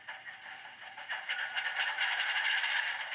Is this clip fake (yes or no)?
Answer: yes